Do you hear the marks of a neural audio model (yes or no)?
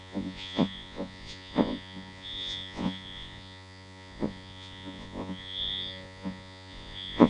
yes